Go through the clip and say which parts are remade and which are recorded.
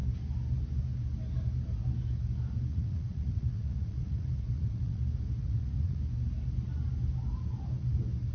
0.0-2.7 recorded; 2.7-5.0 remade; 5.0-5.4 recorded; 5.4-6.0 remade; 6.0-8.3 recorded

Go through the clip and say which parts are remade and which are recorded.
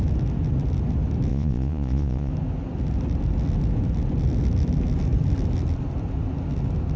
0.0-1.3 recorded; 1.3-2.3 remade; 2.3-7.0 recorded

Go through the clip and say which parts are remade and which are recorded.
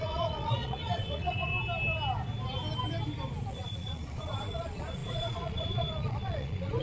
0.0-1.5 remade; 1.5-3.5 recorded; 3.5-6.8 remade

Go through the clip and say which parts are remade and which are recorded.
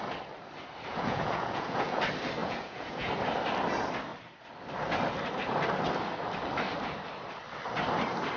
0.0-0.9 recorded; 0.9-2.0 remade; 2.0-2.4 recorded; 2.4-3.1 remade; 3.1-8.4 recorded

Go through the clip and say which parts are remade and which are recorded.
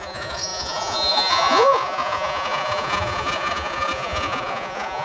0.0-5.0 remade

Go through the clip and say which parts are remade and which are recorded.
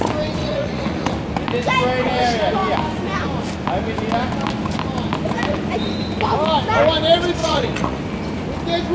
0.0-0.4 recorded; 0.4-1.1 remade; 1.1-7.4 recorded; 7.4-8.0 remade; 8.0-8.9 recorded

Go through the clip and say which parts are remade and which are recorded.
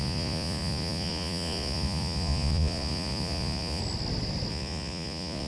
0.0-3.8 remade; 3.8-4.5 recorded; 4.5-5.5 remade